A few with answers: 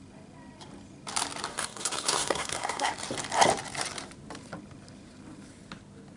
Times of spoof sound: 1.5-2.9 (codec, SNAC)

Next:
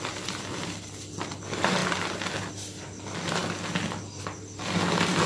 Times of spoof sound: none

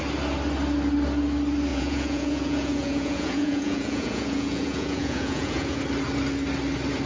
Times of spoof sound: 1.7-5.8 (vocoder, Vocos)

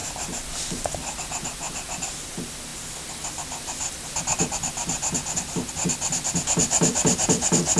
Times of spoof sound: none